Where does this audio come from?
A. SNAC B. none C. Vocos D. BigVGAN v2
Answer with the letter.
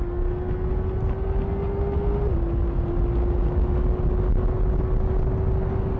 B